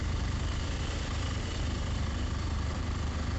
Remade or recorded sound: remade